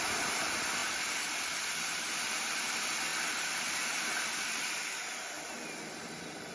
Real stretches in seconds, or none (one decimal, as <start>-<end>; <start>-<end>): 0.0-6.5